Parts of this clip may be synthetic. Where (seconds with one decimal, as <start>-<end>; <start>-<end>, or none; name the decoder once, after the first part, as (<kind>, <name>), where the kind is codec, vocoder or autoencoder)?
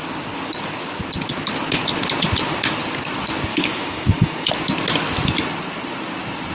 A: 3.5-4.5 (autoencoder, DAC-VAE)